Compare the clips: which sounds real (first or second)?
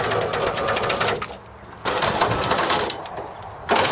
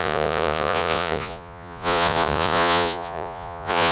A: first